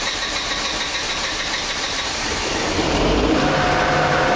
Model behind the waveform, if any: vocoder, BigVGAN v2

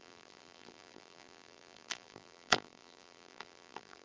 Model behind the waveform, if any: vocoder, BigVGAN v2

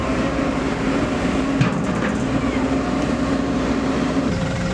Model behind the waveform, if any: vocoder, BigVGAN v2